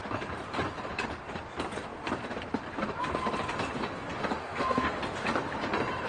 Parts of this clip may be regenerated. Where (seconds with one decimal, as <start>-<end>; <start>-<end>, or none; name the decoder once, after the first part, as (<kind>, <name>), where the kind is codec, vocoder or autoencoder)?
4.4-5.0 (codec, SNAC)